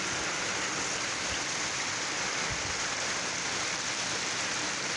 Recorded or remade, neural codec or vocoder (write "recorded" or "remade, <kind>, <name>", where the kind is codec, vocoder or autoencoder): recorded